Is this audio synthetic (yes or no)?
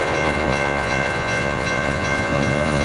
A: yes